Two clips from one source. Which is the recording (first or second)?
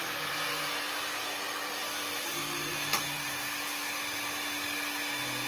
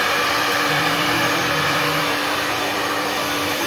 first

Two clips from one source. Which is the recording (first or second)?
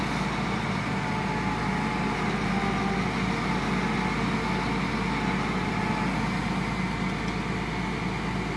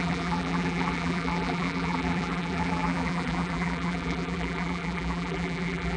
first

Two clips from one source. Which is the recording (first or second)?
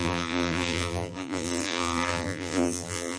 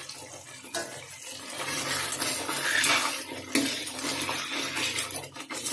second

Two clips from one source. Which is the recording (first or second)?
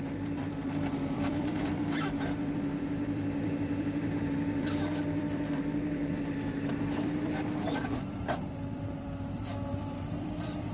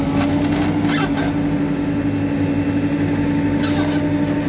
second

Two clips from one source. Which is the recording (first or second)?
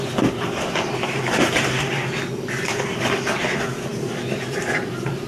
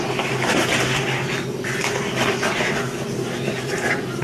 second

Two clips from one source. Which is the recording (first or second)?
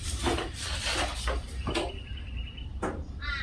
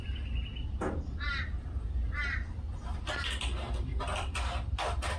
second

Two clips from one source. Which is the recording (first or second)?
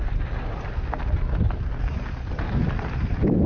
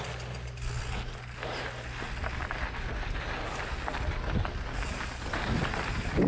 second